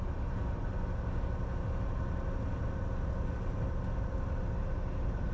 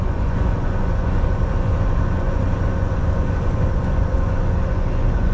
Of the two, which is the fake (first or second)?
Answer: second